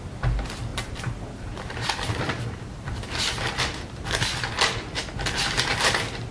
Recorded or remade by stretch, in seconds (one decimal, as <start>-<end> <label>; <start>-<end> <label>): 0.0-0.7 recorded; 0.7-4.5 remade; 4.5-6.3 recorded